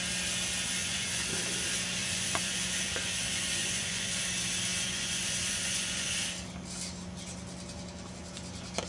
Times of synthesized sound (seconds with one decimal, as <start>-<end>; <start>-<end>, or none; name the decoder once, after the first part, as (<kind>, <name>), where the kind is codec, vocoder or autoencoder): 0.8-1.4 (vocoder, Vocos); 2.0-4.2; 4.7-6.1